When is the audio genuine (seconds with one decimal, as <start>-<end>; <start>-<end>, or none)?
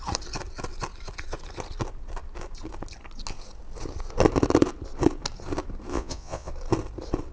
0.0-5.9; 6.5-7.3